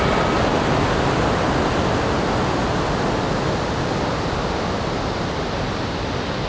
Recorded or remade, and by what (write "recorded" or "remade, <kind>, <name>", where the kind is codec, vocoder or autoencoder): recorded